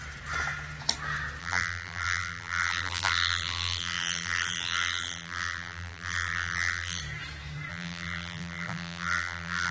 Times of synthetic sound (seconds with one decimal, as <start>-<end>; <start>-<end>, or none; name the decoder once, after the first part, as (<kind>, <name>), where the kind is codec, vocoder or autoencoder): 1.4-7.0 (vocoder, BigVGAN v2); 7.7-9.7